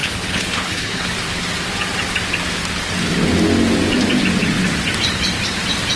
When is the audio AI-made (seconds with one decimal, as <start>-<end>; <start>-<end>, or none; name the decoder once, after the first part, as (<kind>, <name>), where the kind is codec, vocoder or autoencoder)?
0.0-1.1 (codec, HILCodec)